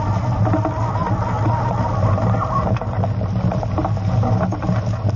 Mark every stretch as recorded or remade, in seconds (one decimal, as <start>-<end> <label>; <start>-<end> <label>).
0.0-5.2 recorded